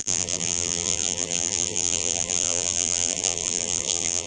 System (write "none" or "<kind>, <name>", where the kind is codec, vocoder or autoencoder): vocoder, BigVGAN v2